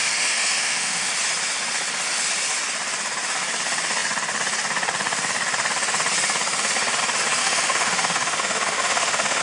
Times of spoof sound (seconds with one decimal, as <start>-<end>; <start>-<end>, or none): 0.0-1.1; 7.4-9.4